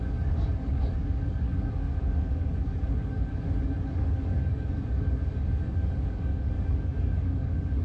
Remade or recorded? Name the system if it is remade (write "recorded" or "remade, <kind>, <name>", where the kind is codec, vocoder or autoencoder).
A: remade, codec, DAC